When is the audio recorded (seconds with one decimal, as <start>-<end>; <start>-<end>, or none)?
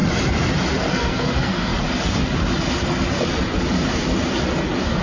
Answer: 0.0-0.9; 1.7-5.0